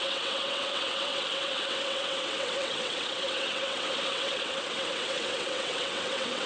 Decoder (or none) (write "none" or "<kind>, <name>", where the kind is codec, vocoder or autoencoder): vocoder, WaveNeXt